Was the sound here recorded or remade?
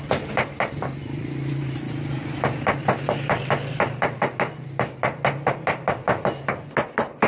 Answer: recorded